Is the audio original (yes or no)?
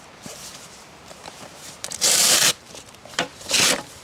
no